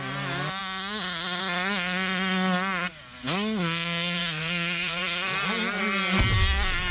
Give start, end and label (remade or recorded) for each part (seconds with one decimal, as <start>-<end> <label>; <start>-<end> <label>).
0.0-4.2 recorded; 4.2-5.0 remade; 5.0-6.9 recorded